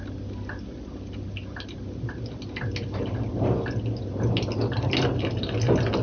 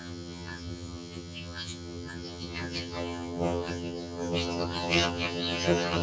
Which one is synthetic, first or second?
second